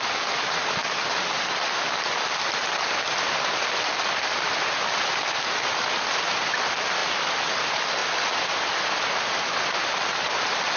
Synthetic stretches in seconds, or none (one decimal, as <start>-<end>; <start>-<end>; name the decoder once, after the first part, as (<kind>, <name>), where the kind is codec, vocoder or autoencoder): none